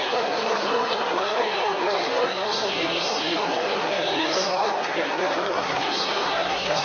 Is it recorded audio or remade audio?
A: remade